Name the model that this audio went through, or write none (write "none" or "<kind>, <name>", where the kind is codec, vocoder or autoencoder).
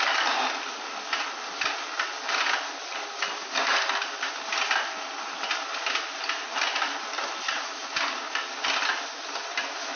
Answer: none